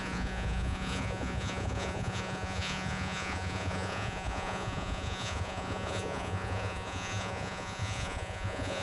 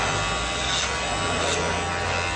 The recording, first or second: second